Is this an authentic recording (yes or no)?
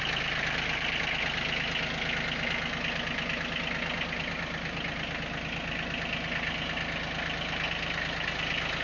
yes